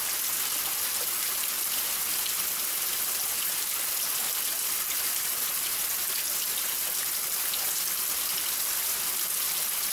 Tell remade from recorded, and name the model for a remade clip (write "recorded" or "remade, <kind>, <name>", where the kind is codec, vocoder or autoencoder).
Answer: recorded